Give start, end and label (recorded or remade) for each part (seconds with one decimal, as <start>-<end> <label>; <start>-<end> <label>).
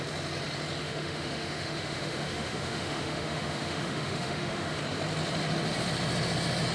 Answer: 0.0-0.8 recorded; 0.8-4.8 remade; 4.8-6.7 recorded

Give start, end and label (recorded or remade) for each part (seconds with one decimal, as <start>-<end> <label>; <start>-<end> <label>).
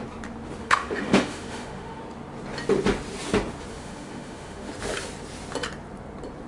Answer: 0.0-0.6 recorded; 0.6-2.0 remade; 2.0-3.7 recorded; 3.7-4.7 remade; 4.7-6.5 recorded